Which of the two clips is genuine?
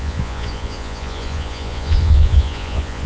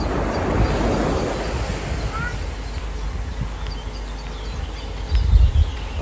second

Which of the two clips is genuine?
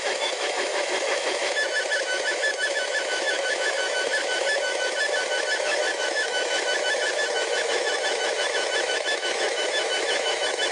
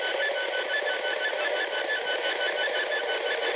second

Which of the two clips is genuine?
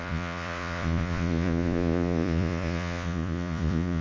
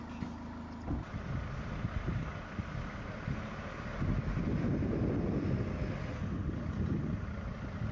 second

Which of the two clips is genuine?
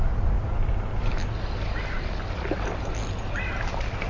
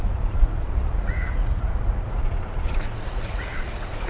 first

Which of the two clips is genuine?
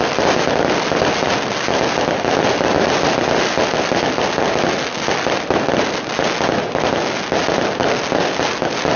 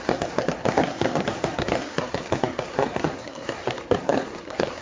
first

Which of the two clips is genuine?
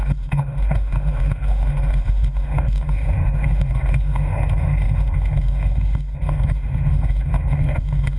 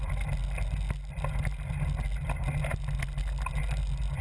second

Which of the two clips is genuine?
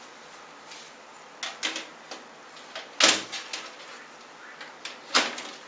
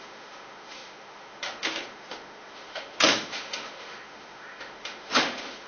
first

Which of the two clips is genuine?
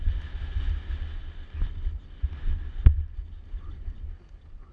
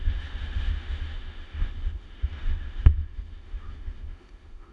first